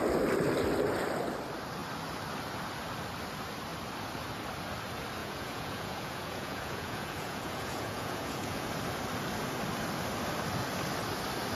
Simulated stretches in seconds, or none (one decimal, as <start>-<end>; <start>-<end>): 5.2-8.7